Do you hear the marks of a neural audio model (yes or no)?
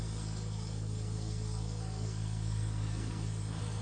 yes